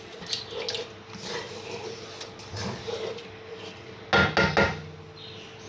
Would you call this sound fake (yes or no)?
no